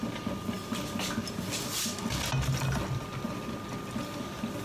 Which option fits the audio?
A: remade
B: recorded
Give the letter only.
B